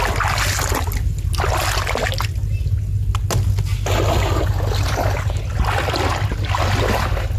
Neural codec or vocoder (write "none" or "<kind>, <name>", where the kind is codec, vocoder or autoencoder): none